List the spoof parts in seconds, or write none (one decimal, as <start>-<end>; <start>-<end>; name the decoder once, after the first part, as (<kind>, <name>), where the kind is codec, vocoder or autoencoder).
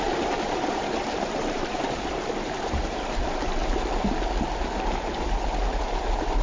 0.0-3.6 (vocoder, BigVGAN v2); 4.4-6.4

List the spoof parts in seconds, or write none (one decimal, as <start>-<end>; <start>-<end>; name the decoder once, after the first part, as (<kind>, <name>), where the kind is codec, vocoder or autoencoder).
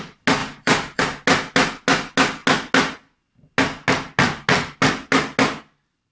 0.4-1.0 (vocoder, BigVGAN v2)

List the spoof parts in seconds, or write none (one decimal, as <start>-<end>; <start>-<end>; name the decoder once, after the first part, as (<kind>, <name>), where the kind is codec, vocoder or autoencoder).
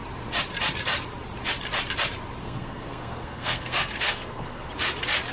2.4-4.7 (codec, SNAC)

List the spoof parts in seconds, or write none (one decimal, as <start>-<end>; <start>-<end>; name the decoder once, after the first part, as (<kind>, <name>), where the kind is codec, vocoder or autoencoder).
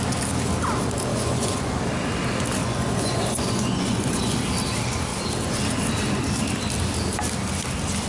1.1-1.8 (vocoder, Vocos); 2.6-4.4